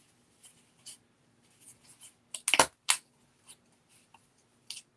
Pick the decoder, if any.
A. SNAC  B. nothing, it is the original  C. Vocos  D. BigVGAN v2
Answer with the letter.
B